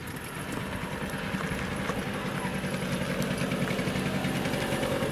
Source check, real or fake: real